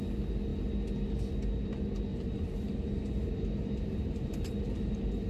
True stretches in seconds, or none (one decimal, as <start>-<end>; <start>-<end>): 0.0-2.1